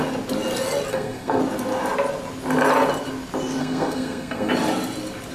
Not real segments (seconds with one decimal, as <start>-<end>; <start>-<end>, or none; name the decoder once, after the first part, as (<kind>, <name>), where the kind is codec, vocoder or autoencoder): 0.9-1.4 (codec, SNAC); 3.6-4.5